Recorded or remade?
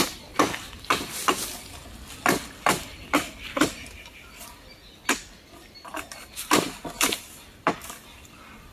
recorded